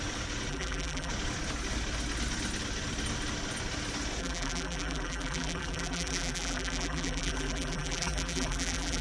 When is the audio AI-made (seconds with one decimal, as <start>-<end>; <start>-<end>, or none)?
0.5-1.1; 4.2-9.0